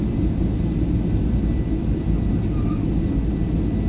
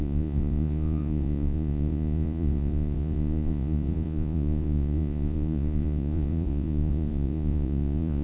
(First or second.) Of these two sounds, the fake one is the second